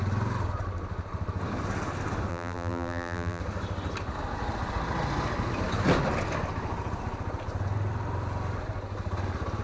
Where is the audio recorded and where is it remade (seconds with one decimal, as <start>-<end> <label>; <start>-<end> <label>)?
0.0-2.3 recorded; 2.3-3.4 remade; 3.4-9.6 recorded